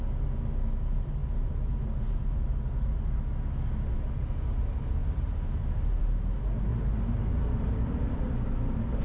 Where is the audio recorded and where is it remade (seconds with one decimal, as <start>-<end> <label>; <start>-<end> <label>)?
0.0-1.2 recorded; 1.2-2.7 remade; 2.7-5.0 recorded; 5.0-6.0 remade; 6.0-6.7 recorded; 6.7-8.3 remade; 8.3-9.0 recorded